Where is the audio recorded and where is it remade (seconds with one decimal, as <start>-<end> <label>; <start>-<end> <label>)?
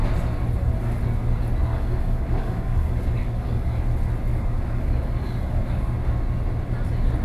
0.0-1.7 recorded; 1.7-3.8 remade; 3.8-4.3 recorded; 4.3-5.6 remade; 5.6-7.2 recorded